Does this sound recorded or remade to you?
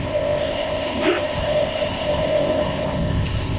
remade